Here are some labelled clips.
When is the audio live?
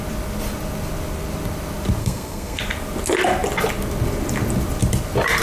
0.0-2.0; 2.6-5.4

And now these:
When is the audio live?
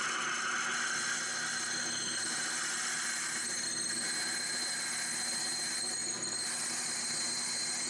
0.0-7.9